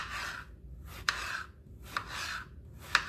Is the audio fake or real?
real